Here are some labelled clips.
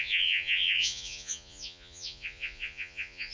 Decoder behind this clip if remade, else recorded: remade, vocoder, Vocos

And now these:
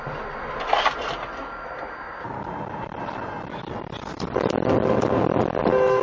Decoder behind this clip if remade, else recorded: recorded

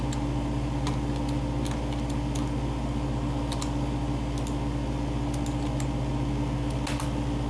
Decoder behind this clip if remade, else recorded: recorded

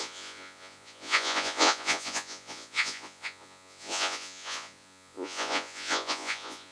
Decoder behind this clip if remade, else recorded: remade, vocoder, Vocos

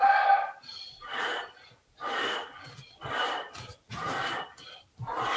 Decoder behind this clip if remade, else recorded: recorded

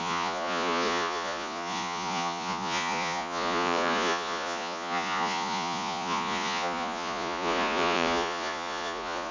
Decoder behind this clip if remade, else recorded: remade, vocoder, Vocos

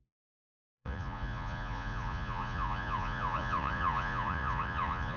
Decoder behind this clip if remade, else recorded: remade, vocoder, Vocos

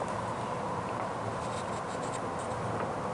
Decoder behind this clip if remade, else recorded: recorded